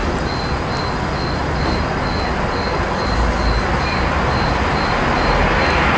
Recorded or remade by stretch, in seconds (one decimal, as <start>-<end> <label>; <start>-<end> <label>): 0.0-6.0 recorded